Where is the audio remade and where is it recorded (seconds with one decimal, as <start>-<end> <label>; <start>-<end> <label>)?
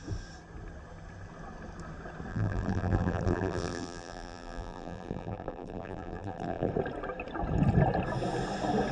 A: 0.0-2.3 recorded; 2.3-6.7 remade; 6.7-8.9 recorded